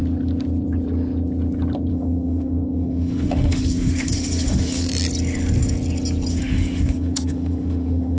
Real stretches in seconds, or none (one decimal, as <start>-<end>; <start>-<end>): 0.0-1.9; 4.9-6.3